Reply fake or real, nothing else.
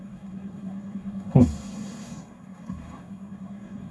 fake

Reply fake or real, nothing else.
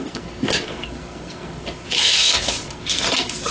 fake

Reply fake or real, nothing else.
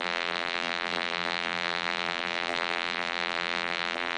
fake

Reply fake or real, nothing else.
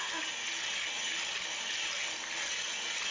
real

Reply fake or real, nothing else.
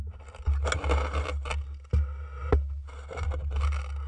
real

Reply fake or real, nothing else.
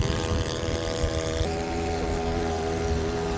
fake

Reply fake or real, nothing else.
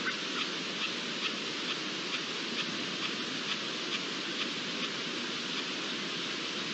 real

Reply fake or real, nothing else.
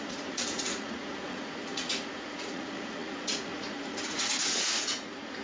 fake